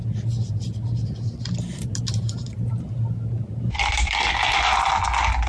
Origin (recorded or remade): recorded